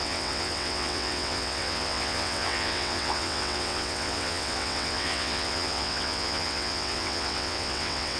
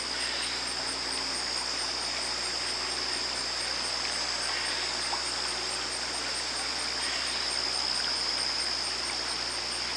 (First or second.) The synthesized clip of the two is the first